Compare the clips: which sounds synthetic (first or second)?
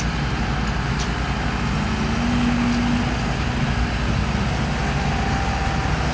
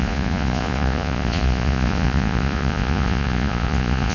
second